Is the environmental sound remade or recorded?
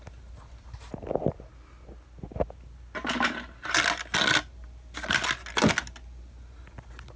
recorded